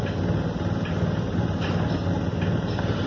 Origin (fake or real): real